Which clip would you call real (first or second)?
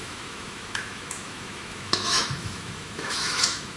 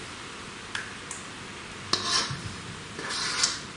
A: second